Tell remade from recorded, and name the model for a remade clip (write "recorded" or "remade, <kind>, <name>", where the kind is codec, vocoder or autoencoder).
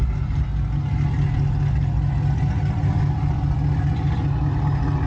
recorded